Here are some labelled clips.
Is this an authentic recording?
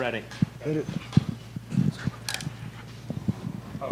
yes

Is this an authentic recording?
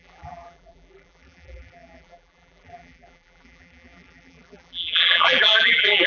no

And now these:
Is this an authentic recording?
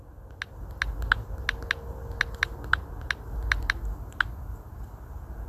yes